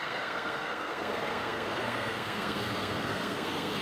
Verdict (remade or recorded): remade